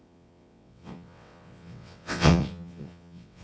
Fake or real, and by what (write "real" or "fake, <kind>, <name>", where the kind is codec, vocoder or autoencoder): fake, vocoder, WaveNeXt